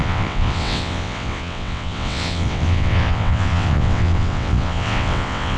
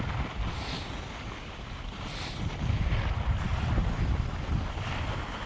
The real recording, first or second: second